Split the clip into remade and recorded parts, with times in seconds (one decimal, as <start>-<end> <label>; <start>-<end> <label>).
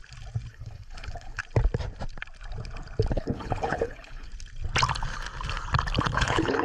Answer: 0.0-0.5 recorded; 0.5-1.4 remade; 1.4-3.1 recorded; 3.1-4.3 remade; 4.3-6.0 recorded; 6.0-6.6 remade